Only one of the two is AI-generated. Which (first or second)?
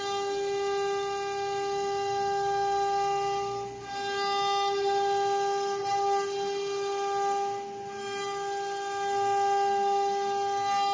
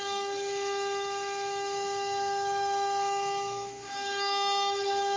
second